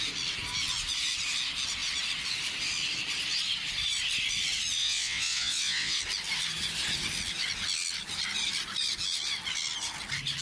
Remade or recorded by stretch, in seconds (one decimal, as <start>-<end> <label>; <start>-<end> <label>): 0.0-4.8 recorded; 4.8-6.0 remade; 6.0-10.4 recorded